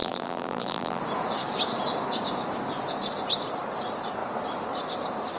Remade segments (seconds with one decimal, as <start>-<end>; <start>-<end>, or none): 0.0-1.0